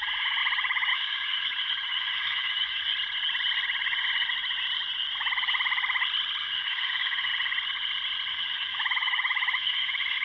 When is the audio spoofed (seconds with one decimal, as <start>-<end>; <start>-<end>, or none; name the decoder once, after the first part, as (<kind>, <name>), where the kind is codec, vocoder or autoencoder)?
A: 0.0-0.4 (autoencoder, DAC-VAE); 0.9-2.9; 6.4-7.3; 8.3-10.2